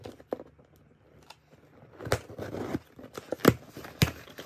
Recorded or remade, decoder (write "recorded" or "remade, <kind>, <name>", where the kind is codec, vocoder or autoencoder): recorded